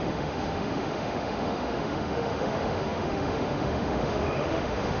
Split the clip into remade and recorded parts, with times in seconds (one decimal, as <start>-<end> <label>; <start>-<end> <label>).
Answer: 0.0-5.0 remade